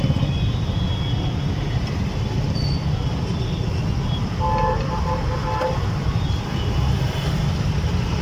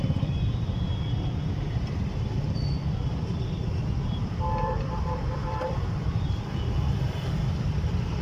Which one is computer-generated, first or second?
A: second